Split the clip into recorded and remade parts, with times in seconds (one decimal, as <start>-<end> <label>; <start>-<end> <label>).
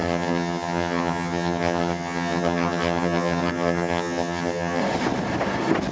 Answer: 0.0-4.8 remade; 4.8-5.9 recorded